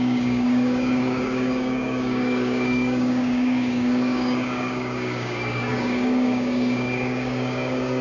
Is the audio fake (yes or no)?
yes